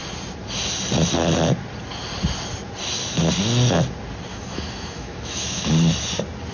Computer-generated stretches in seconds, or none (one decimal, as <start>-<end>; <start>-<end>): 4.3-5.7